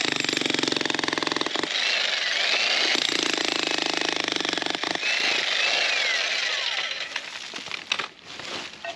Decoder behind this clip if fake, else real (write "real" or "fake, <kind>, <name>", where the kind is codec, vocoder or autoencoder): real